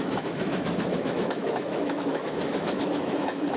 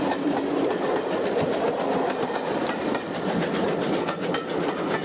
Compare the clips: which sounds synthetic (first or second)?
first